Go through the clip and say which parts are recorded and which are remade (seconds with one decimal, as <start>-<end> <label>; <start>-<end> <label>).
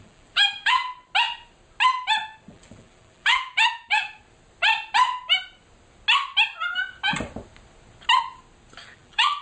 0.0-0.8 remade; 0.8-2.5 recorded; 2.5-4.2 remade; 4.2-8.8 recorded; 8.8-9.4 remade